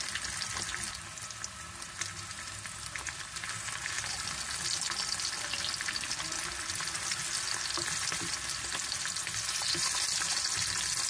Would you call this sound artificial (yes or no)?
no